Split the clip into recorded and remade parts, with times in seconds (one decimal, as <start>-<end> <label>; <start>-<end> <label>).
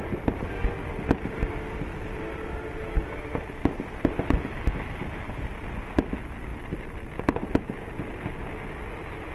0.0-9.3 recorded